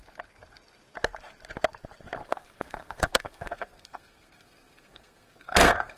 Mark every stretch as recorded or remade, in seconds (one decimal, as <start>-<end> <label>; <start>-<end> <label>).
0.0-2.2 recorded; 2.2-6.0 remade